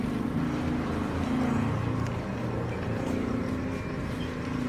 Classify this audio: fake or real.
real